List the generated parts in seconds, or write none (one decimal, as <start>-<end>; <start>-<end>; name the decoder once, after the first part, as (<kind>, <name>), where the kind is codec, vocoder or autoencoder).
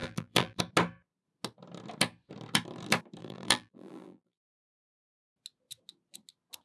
0.0-0.6 (vocoder, BigVGAN v2); 3.2-5.1